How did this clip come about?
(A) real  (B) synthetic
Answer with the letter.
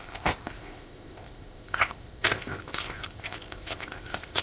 B